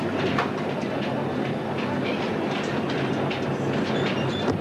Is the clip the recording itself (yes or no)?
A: yes